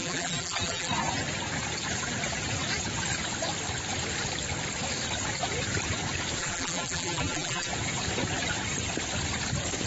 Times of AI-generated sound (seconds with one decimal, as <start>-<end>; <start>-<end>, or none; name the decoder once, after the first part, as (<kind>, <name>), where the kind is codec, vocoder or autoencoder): 0.0-0.9 (vocoder, BigVGAN v2); 6.4-7.7